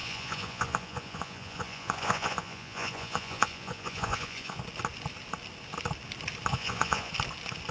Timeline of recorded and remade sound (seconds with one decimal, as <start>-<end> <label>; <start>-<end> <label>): 0.0-4.6 remade; 4.6-6.5 recorded; 6.5-7.1 remade; 7.1-7.7 recorded